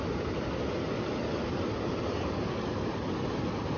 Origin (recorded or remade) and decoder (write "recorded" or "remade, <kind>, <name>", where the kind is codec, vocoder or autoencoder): recorded